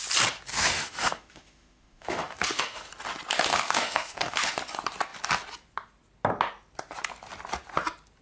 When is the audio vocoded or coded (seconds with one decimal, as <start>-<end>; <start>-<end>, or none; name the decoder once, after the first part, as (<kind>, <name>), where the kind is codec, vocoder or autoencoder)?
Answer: 0.5-2.9 (autoencoder, DAC-VAE); 3.5-4.5